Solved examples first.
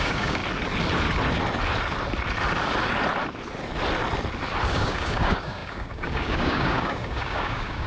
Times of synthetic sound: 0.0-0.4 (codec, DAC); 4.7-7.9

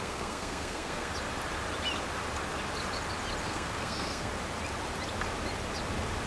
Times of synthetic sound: 0.0-1.1 (codec, SNAC); 3.4-4.3